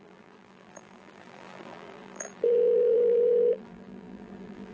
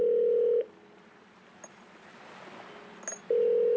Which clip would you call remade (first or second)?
first